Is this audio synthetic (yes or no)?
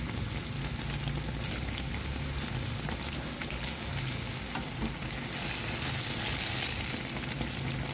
no